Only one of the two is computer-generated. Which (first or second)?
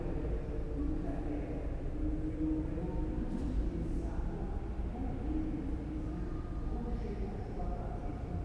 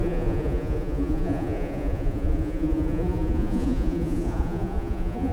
second